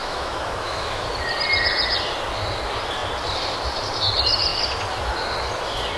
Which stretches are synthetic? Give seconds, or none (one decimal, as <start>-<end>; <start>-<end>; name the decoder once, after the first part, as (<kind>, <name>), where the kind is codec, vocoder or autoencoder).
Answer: 0.0-1.1 (autoencoder, DAC-VAE)